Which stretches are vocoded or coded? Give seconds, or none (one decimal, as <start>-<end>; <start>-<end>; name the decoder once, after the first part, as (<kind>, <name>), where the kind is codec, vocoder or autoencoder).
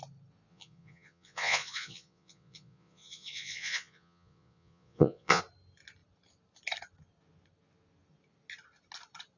0.5-5.4 (vocoder, Vocos)